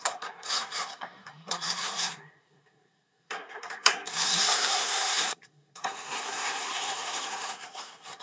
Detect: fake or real fake